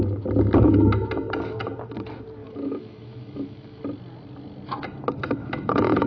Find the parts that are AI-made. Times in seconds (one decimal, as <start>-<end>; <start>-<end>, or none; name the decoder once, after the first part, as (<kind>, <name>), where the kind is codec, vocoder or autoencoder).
2.4-3.8 (autoencoder, DAC-VAE); 5.4-6.1